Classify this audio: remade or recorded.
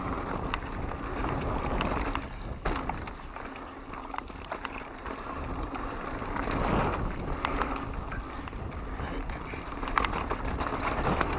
recorded